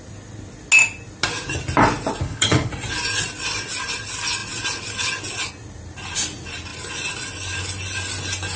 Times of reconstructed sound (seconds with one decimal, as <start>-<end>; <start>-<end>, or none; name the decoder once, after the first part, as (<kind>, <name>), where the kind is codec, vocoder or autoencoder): 2.2-2.7 (codec, HILCodec)